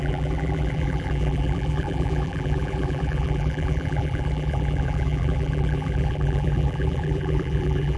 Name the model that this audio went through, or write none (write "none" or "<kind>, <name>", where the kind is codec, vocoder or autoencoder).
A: vocoder, BigVGAN v2